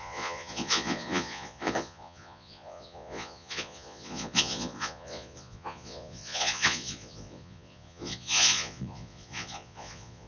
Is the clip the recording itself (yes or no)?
no